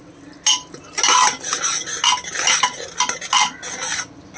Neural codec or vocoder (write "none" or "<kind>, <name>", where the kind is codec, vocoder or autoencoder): none